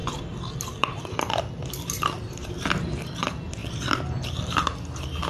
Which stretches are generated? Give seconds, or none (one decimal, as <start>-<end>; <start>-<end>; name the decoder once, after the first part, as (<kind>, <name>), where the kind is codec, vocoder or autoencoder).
0.0-3.2 (vocoder, BigVGAN v2)